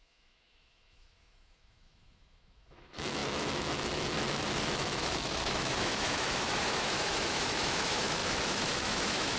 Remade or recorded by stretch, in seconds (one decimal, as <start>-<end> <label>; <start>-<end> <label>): 0.0-9.4 remade